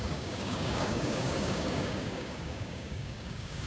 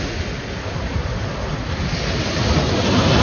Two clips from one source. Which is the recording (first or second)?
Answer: second